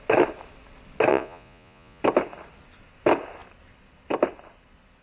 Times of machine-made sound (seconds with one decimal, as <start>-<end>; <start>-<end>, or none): 1.1-2.0